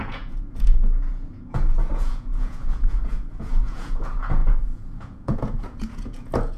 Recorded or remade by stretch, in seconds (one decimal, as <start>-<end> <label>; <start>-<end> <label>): 0.0-6.6 remade

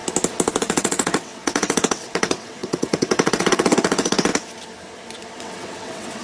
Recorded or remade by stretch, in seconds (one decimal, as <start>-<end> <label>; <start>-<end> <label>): 0.0-0.6 recorded; 0.6-4.3 remade; 4.3-5.4 recorded; 5.4-6.2 remade